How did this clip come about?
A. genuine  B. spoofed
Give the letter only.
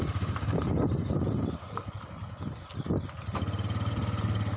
A